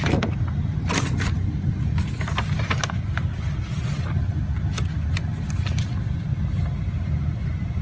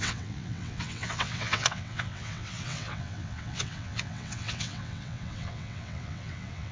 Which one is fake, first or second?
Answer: second